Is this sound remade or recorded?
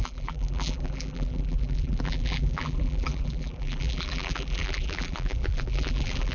remade